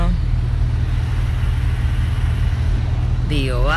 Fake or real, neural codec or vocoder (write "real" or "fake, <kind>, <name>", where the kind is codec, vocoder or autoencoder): real